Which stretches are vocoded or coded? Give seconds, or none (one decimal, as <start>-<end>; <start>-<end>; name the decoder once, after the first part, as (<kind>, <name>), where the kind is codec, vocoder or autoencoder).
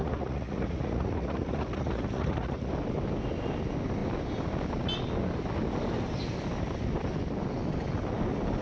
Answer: 0.0-2.7 (vocoder, Vocos)